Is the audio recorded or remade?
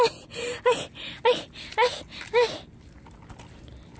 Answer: recorded